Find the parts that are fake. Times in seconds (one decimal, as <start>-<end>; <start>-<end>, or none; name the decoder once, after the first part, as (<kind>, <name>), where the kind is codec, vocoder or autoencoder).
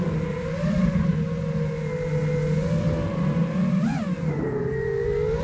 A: none